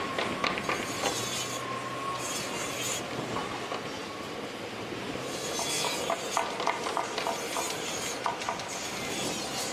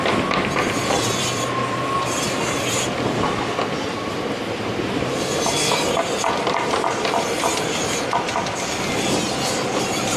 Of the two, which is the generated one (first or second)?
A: second